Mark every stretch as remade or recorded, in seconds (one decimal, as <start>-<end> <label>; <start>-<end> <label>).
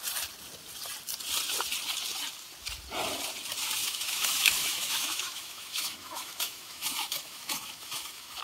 0.0-3.8 recorded; 3.8-8.4 remade